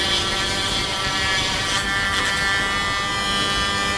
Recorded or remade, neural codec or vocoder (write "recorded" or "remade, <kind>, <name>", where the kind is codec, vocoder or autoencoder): recorded